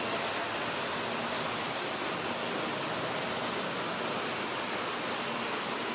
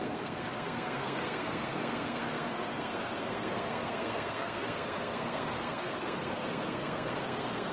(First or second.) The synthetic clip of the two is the second